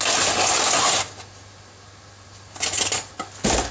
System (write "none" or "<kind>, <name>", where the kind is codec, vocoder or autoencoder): none